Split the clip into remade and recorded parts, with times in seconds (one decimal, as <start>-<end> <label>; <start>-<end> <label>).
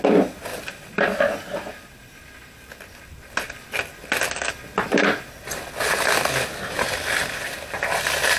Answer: 0.0-8.4 recorded